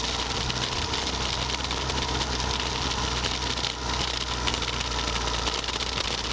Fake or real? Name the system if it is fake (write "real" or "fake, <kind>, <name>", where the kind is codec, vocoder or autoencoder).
real